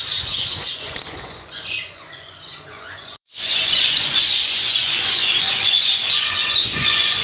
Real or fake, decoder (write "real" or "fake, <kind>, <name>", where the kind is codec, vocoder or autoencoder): fake, vocoder, Vocos